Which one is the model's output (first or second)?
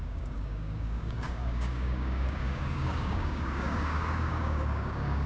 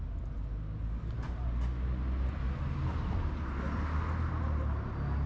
first